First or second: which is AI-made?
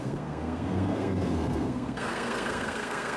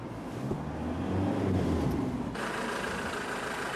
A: first